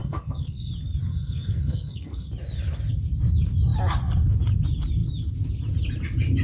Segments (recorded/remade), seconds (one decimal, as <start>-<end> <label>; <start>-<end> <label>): 0.0-0.7 remade; 0.7-1.1 recorded; 1.1-2.3 remade; 2.3-6.4 recorded